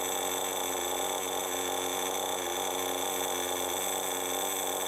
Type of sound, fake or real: real